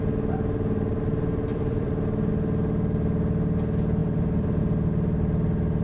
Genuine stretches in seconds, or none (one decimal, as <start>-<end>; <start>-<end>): 0.0-1.5; 2.3-4.0; 4.6-5.8